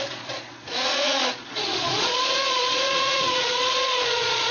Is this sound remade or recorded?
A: remade